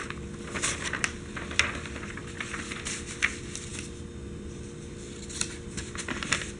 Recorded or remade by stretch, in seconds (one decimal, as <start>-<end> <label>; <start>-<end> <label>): 0.0-5.8 recorded; 5.8-6.6 remade